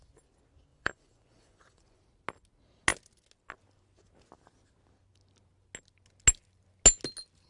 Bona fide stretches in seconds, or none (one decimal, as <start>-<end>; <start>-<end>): 0.0-0.7; 2.0-7.5